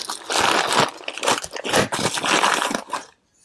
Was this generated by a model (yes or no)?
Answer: no